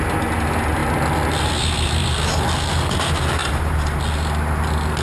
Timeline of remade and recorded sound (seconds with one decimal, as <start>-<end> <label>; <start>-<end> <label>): 0.0-3.4 recorded; 3.4-4.0 remade; 4.0-5.0 recorded